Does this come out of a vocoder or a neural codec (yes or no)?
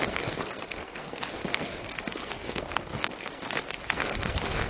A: yes